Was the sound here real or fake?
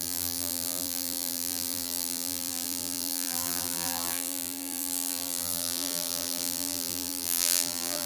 fake